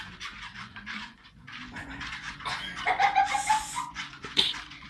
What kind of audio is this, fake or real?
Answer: fake